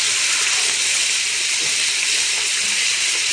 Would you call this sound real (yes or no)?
yes